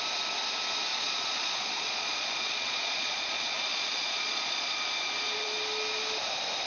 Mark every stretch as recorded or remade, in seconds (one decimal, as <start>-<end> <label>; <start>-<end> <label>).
0.0-0.9 recorded; 0.9-4.9 remade; 4.9-6.7 recorded